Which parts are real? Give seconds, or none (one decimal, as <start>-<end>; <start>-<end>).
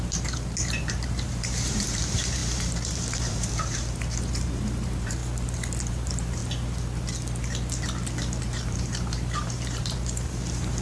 5.2-5.9; 6.4-8.4